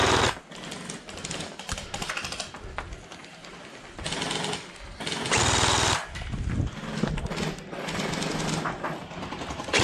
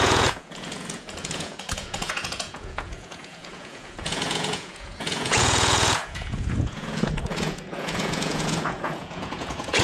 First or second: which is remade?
second